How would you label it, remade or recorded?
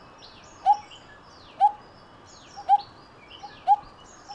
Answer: recorded